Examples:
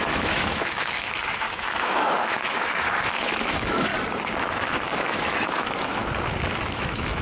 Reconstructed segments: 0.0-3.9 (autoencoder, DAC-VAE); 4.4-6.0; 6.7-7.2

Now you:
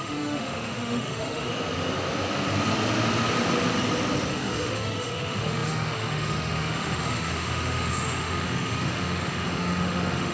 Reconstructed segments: 0.0-1.5 (autoencoder, DAC-VAE); 4.3-10.3

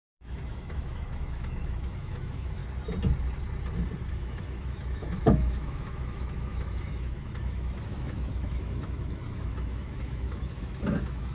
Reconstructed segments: 0.0-2.6 (autoencoder, DAC-VAE); 4.1-11.3

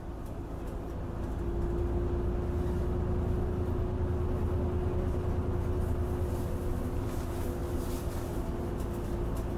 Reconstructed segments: none

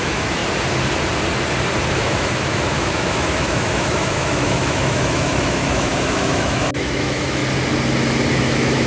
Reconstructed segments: 0.0-0.4 (autoencoder, DAC-VAE); 1.9-7.4; 8.3-8.9